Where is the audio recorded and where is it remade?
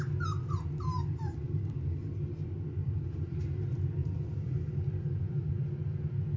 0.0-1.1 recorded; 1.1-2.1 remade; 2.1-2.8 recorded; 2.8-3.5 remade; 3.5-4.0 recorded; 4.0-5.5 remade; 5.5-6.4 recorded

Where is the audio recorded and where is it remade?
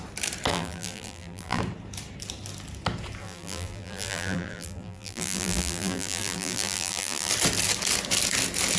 0.0-0.5 recorded; 0.5-1.6 remade; 1.6-3.2 recorded; 3.2-7.3 remade; 7.3-8.8 recorded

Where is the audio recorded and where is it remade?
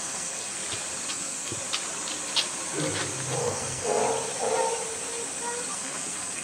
0.0-0.6 remade; 0.6-1.1 recorded; 1.1-1.5 remade; 1.5-3.4 recorded; 3.4-4.0 remade; 4.0-5.7 recorded; 5.7-6.4 remade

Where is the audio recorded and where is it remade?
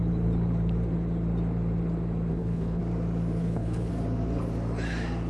0.0-2.3 recorded; 2.3-2.8 remade; 2.8-3.4 recorded; 3.4-3.9 remade; 3.9-5.3 recorded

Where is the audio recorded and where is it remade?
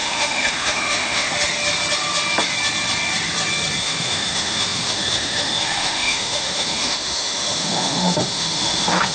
0.0-1.3 remade; 1.3-3.8 recorded; 3.8-9.1 remade